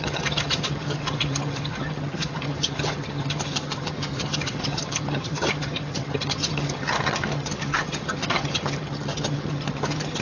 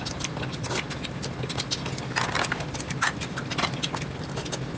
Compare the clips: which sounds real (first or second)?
second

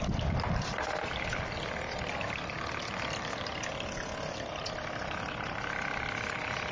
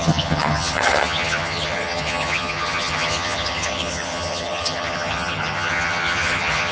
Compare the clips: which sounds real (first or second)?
first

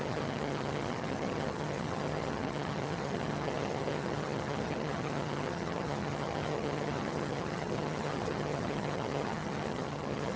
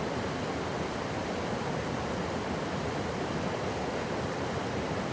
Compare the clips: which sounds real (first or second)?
second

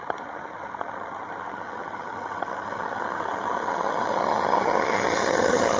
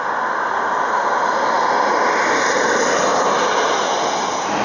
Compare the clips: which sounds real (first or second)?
second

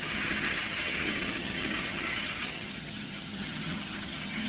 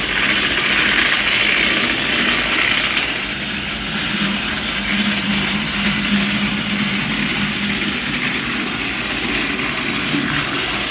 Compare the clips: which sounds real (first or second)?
second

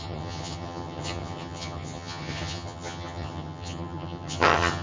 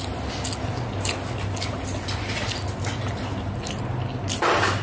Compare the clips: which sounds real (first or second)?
second